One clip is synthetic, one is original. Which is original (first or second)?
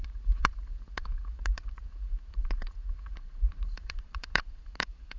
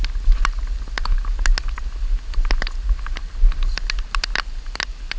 second